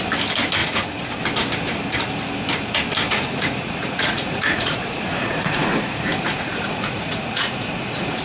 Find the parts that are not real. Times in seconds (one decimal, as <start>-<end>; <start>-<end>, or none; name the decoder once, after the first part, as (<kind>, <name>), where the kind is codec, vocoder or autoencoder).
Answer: 0.6-1.2 (vocoder, Vocos); 3.1-8.2